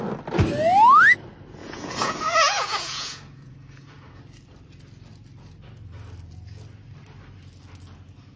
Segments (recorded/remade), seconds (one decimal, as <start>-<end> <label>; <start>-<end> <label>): 0.0-1.6 recorded; 1.6-4.2 remade; 4.2-8.4 recorded